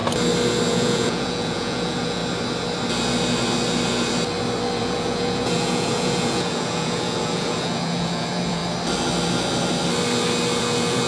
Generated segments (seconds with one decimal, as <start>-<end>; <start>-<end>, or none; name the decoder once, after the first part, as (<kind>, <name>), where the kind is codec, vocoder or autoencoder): 0.7-2.2 (vocoder, Vocos); 4.8-8.6; 10.6-11.1